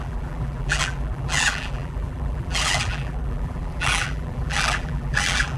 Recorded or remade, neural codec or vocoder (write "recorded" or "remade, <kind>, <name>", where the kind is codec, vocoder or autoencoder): remade, vocoder, BigVGAN v2